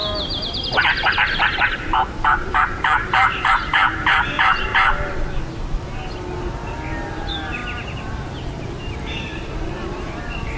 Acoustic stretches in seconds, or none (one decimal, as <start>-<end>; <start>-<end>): 4.7-7.1